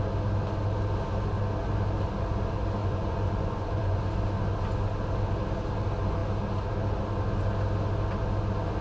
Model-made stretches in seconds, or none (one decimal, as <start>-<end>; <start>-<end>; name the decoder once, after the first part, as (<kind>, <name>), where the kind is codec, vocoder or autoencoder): 2.8-4.0 (vocoder, Vocos)